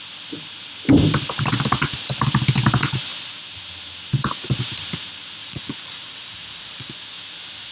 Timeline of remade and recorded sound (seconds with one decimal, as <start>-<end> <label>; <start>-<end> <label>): 0.0-5.4 recorded; 5.4-6.9 remade; 6.9-7.7 recorded